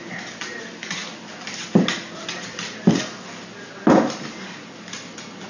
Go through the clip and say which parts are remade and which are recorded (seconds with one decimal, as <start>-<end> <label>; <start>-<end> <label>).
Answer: 0.0-5.5 recorded